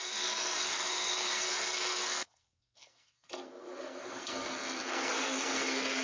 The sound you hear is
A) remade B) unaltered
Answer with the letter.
A